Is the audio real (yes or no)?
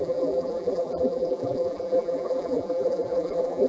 no